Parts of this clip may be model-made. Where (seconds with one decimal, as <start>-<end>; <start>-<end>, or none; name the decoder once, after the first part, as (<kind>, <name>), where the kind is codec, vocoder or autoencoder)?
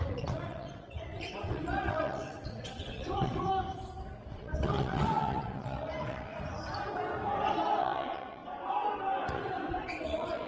0.0-3.5 (vocoder, WaveNeXt); 4.3-6.3; 7.8-8.4; 9.3-10.5